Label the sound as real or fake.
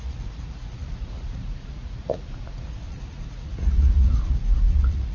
fake